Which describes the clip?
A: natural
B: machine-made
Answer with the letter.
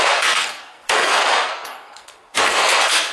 B